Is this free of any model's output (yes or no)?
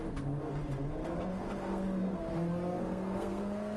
no